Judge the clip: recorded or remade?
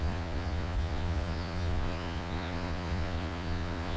remade